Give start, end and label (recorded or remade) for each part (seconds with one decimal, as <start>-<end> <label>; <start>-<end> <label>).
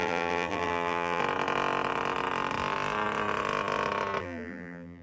0.0-1.2 remade; 1.2-4.2 recorded; 4.2-5.0 remade